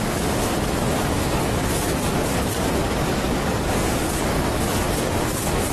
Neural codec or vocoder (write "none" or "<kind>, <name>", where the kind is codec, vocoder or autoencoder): codec, DAC